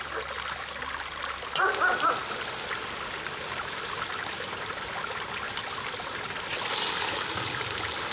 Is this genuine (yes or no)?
yes